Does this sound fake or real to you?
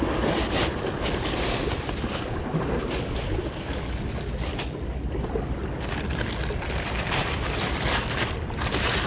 real